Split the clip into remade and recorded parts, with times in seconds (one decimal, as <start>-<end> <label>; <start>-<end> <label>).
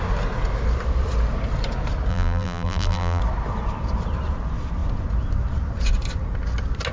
0.0-2.1 recorded; 2.1-3.2 remade; 3.2-6.9 recorded